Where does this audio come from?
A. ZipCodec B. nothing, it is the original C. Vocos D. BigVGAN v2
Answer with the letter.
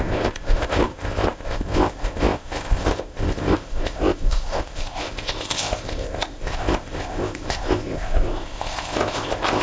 A